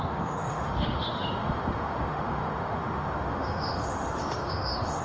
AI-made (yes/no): yes